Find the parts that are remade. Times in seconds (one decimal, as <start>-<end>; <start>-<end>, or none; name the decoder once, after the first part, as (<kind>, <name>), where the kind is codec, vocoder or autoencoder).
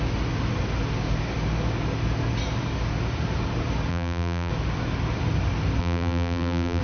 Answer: 3.9-4.5 (vocoder, BigVGAN v2); 5.8-6.8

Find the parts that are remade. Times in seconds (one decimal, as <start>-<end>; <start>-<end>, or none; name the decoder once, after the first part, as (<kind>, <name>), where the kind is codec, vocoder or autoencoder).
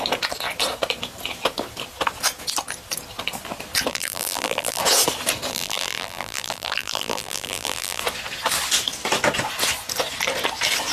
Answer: 3.9-4.8 (vocoder, BigVGAN v2); 5.5-8.0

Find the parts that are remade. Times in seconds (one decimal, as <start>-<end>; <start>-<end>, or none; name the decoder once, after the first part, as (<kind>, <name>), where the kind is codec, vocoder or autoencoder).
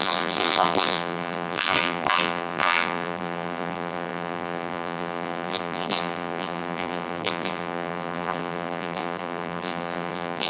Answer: 0.0-10.5 (vocoder, BigVGAN v2)